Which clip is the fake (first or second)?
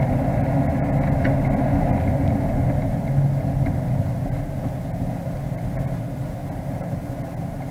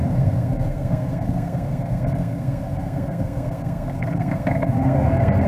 second